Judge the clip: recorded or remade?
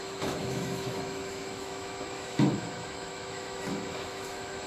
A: remade